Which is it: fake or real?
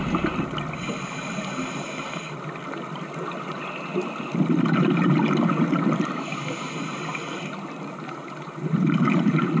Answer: real